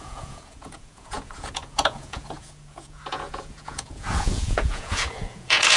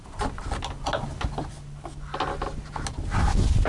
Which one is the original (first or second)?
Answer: second